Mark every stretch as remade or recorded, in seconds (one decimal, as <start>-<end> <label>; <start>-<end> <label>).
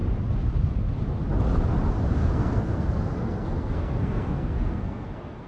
0.0-2.2 recorded; 2.2-5.5 remade